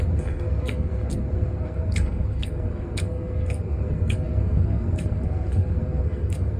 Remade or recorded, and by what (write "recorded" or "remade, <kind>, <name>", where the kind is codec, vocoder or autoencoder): remade, codec, SNAC